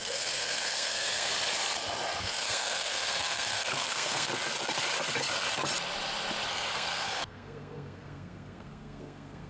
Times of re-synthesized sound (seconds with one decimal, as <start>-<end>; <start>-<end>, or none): 0.0-1.3; 2.2-4.3; 6.5-9.5